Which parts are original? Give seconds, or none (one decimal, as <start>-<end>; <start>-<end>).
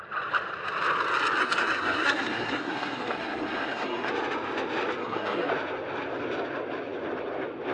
0.0-1.4; 4.1-5.0; 5.5-7.7